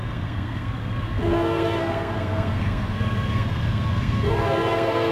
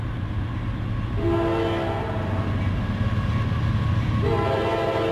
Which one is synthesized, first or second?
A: first